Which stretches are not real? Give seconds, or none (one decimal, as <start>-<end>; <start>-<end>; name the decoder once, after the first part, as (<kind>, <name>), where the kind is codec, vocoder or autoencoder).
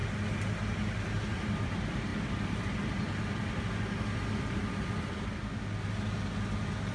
none